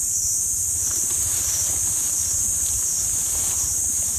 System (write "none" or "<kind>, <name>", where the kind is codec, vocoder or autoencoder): none